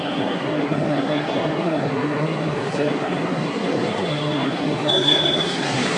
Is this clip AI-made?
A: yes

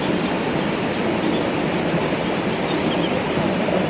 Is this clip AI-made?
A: no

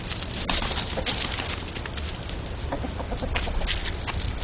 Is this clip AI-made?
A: no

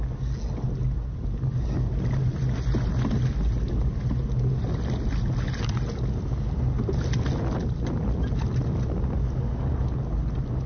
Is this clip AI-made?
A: no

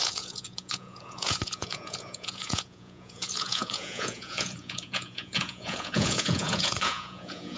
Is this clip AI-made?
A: yes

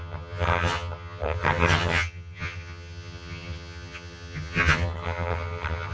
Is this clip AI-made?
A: yes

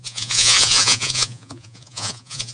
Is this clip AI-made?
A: yes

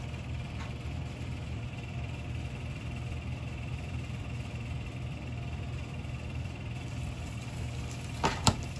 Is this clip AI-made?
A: yes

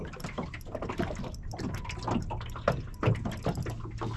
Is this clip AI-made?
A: no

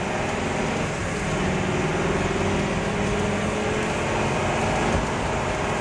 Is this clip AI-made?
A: no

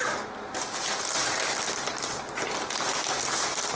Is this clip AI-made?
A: no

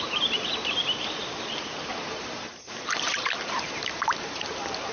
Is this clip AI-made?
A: yes